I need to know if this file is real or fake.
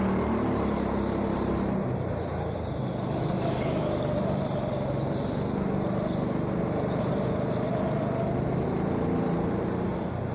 real